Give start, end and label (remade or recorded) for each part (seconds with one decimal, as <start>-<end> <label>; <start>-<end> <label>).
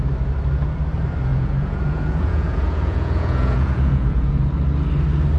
0.0-1.3 recorded; 1.3-4.5 remade; 4.5-5.4 recorded